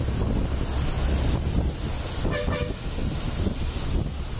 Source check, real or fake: real